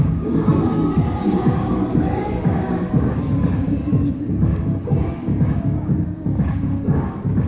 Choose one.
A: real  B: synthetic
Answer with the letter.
B